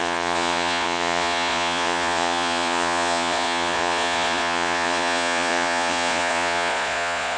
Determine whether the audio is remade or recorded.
remade